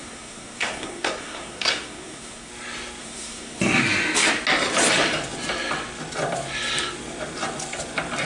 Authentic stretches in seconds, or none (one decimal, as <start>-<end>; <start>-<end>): 2.5-3.0; 3.6-8.2